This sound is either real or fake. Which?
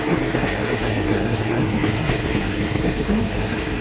fake